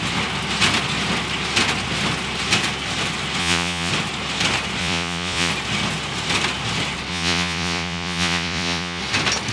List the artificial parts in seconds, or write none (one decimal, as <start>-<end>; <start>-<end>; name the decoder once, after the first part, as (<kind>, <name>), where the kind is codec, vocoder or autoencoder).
3.4-3.9 (vocoder, Vocos); 4.8-5.5; 7.1-9.0